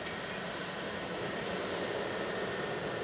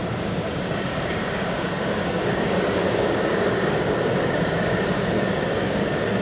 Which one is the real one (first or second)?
first